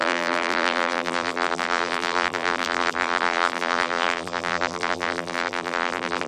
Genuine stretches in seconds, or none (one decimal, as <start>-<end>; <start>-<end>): none

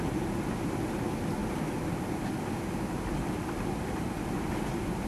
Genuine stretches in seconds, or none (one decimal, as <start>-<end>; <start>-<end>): 0.0-5.1

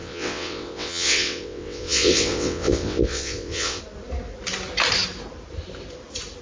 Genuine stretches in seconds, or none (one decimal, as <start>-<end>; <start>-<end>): 3.8-6.4

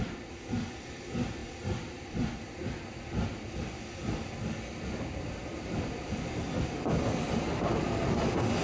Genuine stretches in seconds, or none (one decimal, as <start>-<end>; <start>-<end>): 0.0-1.4; 3.6-8.6

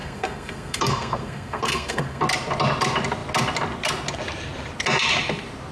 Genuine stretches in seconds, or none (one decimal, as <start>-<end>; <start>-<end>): 2.2-5.7

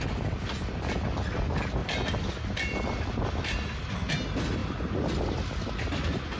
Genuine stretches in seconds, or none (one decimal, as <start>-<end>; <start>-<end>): 0.0-1.8; 3.9-6.4